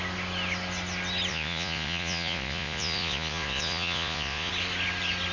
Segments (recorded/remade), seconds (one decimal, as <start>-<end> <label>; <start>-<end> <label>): 0.0-1.3 recorded; 1.3-4.5 remade; 4.5-5.3 recorded

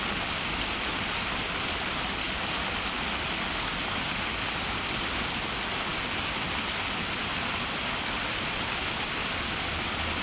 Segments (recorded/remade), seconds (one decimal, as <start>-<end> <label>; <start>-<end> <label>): 0.0-10.2 recorded

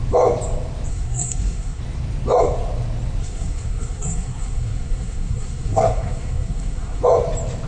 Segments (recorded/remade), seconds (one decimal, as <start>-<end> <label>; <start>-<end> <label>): 0.0-0.9 recorded; 0.9-1.8 remade; 1.8-3.2 recorded; 3.2-7.0 remade; 7.0-7.7 recorded